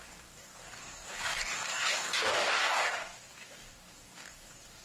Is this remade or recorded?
remade